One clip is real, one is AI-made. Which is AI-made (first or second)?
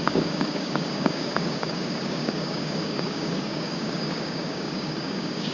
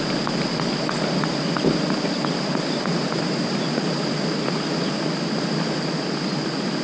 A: first